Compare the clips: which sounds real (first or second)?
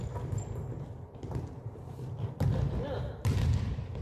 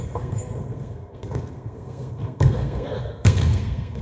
first